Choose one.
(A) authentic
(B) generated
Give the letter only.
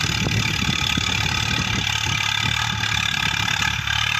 A